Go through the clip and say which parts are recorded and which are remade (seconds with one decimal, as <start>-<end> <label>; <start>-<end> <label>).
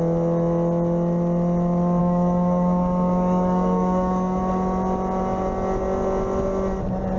0.0-2.0 recorded; 2.0-4.4 remade; 4.4-7.2 recorded